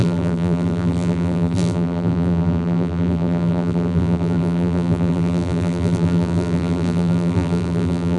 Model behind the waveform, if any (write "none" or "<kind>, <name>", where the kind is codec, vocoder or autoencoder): vocoder, BigVGAN v2